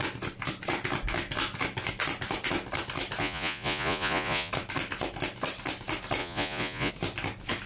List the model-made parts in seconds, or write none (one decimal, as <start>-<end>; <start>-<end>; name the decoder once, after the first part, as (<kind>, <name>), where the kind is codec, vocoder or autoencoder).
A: 3.2-4.5 (vocoder, Vocos); 6.2-6.9